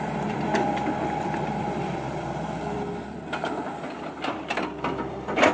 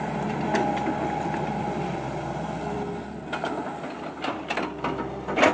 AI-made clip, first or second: first